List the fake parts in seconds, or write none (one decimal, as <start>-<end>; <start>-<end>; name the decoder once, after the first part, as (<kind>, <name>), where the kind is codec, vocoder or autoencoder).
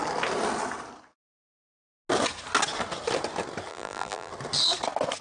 3.7-4.3 (vocoder, BigVGAN v2)